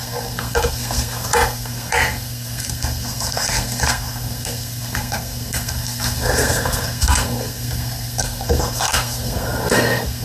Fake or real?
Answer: fake